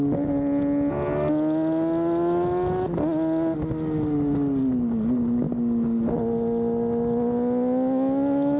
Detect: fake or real real